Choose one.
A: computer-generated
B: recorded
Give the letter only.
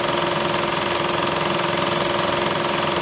B